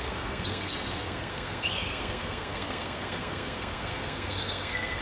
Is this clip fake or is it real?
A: fake